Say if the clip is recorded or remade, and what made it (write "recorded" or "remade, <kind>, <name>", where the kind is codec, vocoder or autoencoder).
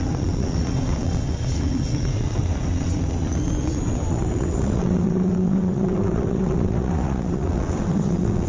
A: remade, vocoder, WaveNeXt